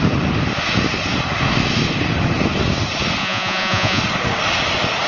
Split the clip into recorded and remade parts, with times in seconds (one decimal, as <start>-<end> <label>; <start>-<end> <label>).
0.0-3.2 recorded; 3.2-4.0 remade; 4.0-5.1 recorded